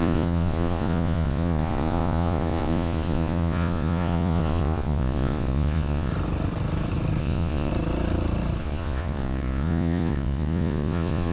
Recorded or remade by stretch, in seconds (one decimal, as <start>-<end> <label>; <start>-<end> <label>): 0.0-6.1 remade; 6.1-7.2 recorded; 7.2-7.7 remade; 7.7-8.6 recorded; 8.6-11.3 remade